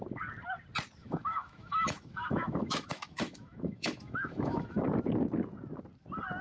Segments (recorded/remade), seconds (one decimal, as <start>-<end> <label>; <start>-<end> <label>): 0.0-1.0 recorded; 1.0-4.8 remade; 4.8-6.4 recorded